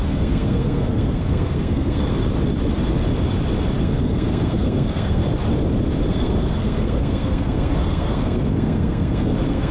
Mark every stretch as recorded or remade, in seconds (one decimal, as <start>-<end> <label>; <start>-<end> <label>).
0.0-2.2 remade; 2.2-3.8 recorded; 3.8-5.2 remade; 5.2-6.1 recorded; 6.1-9.7 remade